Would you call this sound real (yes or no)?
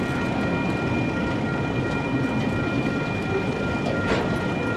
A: yes